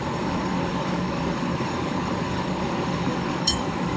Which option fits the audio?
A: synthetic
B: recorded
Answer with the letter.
A